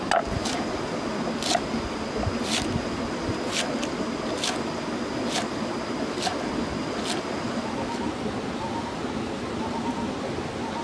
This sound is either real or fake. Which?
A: real